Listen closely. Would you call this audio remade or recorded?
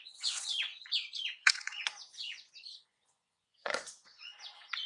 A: remade